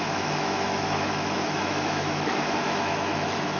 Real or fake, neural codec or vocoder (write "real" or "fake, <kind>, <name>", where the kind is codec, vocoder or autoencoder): fake, autoencoder, DAC-VAE